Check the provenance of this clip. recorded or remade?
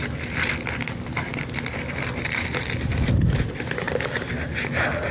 recorded